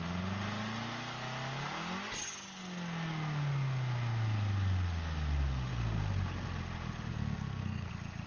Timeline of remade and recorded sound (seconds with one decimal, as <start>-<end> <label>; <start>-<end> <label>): 0.0-7.1 recorded; 7.1-7.9 remade; 7.9-8.3 recorded